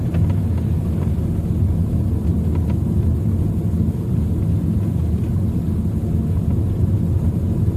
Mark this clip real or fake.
real